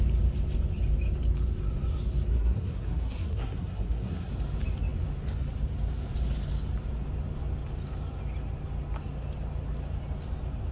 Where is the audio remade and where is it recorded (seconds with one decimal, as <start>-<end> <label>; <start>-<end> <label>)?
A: 0.0-2.3 recorded; 2.3-4.3 remade; 4.3-10.7 recorded